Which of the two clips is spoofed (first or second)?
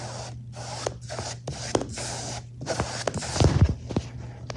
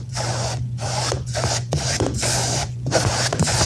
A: second